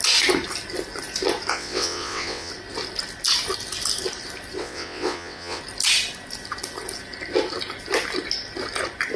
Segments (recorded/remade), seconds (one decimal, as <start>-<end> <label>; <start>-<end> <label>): 0.0-1.5 recorded; 1.5-2.5 remade; 2.5-4.6 recorded; 4.6-5.6 remade; 5.6-9.2 recorded